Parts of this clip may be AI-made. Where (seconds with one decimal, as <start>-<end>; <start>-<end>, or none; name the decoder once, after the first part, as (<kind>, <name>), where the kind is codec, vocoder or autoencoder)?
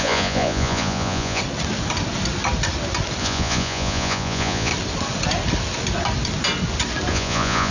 0.0-1.4 (vocoder, Vocos); 3.2-4.7; 7.1-7.7